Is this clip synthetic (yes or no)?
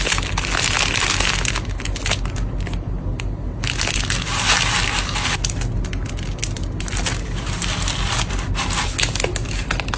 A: no